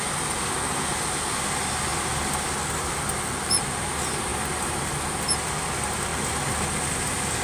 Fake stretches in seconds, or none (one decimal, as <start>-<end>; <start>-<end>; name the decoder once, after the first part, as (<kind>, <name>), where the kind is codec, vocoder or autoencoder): 1.9-3.0 (vocoder, BigVGAN v2)